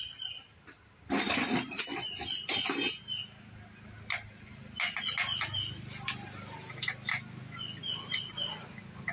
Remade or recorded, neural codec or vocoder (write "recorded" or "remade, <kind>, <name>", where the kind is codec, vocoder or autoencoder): recorded